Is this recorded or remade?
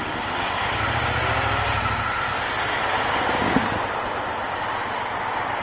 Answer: recorded